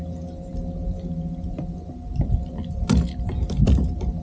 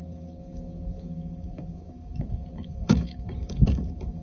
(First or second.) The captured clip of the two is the first